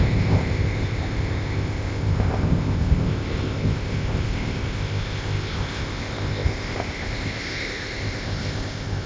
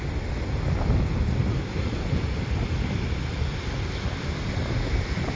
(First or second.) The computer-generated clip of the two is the first